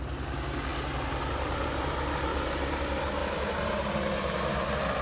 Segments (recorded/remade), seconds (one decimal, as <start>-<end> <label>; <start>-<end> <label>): 0.0-2.3 recorded; 2.3-2.8 remade; 2.8-3.2 recorded; 3.2-3.8 remade; 3.8-5.0 recorded